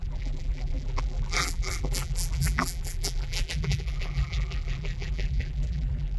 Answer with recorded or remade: remade